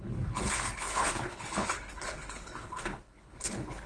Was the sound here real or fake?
fake